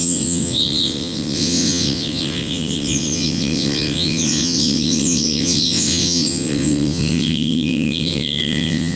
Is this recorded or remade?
remade